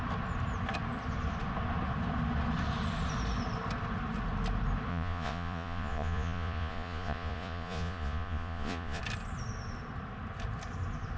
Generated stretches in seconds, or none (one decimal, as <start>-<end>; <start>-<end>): 4.9-9.0